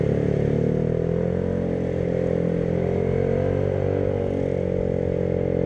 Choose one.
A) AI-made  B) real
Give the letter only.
B